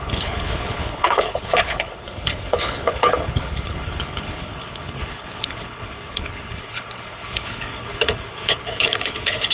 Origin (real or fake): fake